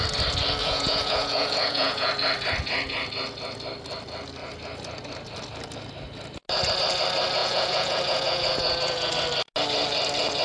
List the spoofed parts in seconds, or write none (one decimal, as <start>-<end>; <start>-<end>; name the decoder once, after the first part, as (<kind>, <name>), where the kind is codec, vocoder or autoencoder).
0.6-2.1 (vocoder, Vocos); 7.4-9.1